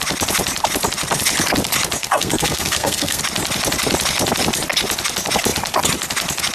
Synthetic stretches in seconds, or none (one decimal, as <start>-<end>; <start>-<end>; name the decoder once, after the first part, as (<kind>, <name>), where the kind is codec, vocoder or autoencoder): 2.0-3.2 (codec, SNAC)

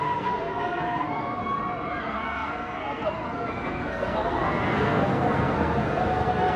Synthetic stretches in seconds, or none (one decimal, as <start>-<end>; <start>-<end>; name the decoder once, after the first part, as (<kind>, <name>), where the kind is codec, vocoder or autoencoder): 0.0-1.4 (codec, SNAC); 2.0-6.6

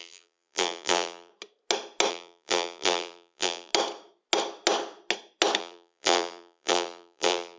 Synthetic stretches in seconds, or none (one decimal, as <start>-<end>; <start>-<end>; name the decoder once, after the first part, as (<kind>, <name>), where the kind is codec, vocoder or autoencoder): 0.0-1.3 (vocoder, BigVGAN v2); 2.1-3.7; 5.6-7.6